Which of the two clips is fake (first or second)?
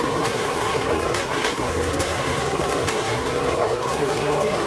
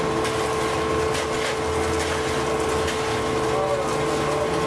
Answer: first